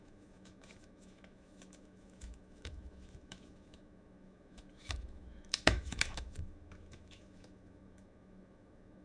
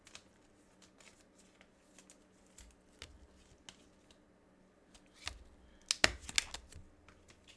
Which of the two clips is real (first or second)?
second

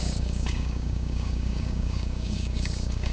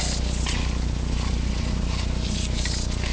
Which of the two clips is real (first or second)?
second